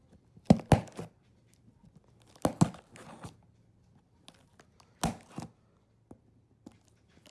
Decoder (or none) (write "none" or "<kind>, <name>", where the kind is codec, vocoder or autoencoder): none